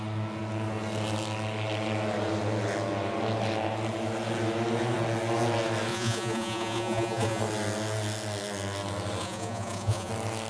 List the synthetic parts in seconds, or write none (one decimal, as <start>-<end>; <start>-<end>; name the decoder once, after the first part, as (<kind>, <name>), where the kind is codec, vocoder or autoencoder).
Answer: 5.9-7.4 (vocoder, Vocos); 9.2-10.1